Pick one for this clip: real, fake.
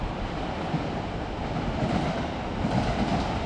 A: real